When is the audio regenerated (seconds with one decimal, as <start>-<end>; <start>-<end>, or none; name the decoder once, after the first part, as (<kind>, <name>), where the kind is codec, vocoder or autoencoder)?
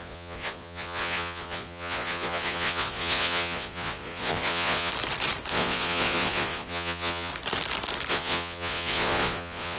0.0-4.9 (vocoder, Vocos); 5.5-7.3; 8.1-9.8